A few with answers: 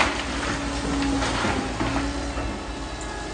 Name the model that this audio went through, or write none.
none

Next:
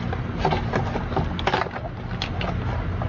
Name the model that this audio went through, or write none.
none